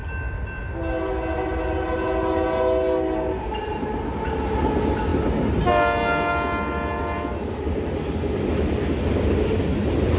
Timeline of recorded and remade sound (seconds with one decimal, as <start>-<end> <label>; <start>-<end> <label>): 0.0-10.2 recorded